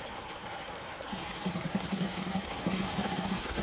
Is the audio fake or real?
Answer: fake